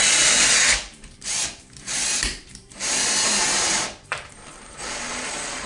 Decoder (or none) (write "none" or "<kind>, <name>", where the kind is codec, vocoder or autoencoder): vocoder, BigVGAN v2